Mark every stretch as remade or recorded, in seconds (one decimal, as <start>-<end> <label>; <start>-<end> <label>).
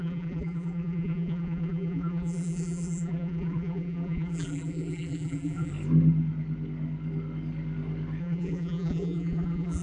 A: 0.0-5.7 remade; 5.7-8.2 recorded; 8.2-9.8 remade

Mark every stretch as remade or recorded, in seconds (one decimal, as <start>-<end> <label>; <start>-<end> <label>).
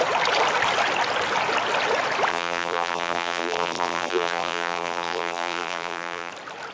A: 0.0-2.3 recorded; 2.3-6.3 remade; 6.3-6.7 recorded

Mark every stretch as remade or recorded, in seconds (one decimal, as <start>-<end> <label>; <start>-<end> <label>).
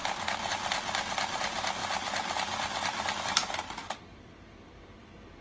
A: 0.0-0.5 recorded; 0.5-1.8 remade; 1.8-3.2 recorded; 3.2-5.4 remade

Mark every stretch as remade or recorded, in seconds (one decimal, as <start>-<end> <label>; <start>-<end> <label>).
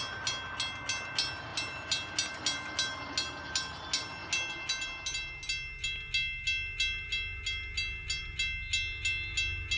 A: 0.0-9.8 recorded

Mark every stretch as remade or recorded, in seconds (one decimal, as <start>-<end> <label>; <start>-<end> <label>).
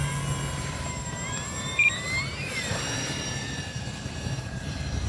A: 0.0-0.6 recorded; 0.6-5.1 remade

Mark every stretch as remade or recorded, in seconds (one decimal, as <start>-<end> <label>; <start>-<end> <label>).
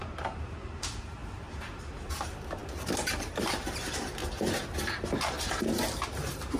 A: 0.0-4.2 remade; 4.2-4.9 recorded; 4.9-6.6 remade